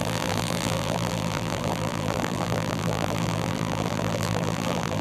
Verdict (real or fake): fake